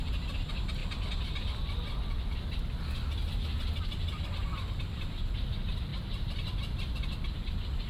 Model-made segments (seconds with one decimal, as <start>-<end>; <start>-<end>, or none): none